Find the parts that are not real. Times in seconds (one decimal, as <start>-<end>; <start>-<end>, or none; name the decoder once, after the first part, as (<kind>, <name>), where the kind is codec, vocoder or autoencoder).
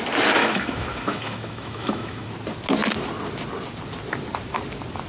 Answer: 0.4-2.3 (autoencoder, DAC-VAE)